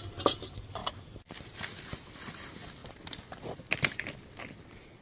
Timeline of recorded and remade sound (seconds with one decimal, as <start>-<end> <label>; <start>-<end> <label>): 0.0-5.0 recorded